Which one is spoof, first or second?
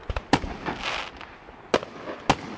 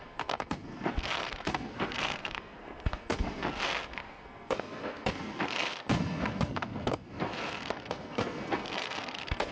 second